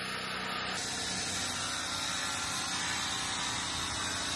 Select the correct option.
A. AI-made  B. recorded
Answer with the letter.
B